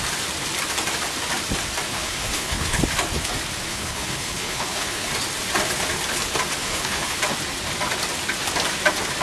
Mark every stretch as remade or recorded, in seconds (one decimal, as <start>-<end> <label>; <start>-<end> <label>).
0.0-1.9 recorded; 1.9-2.8 remade; 2.8-3.7 recorded; 3.7-5.1 remade; 5.1-6.6 recorded; 6.6-7.2 remade; 7.2-9.2 recorded